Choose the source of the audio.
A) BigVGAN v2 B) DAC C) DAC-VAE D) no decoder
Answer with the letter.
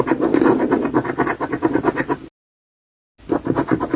D